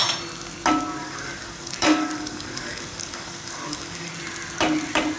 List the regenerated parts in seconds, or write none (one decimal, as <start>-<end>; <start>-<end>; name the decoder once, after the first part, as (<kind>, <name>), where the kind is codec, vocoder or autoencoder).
1.0-4.1 (codec, DAC)